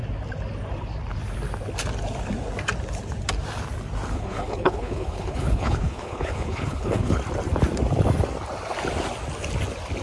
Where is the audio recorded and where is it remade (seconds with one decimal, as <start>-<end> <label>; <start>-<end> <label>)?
0.0-4.1 recorded; 4.1-7.2 remade; 7.2-10.0 recorded